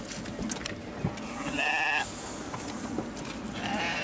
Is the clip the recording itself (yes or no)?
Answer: yes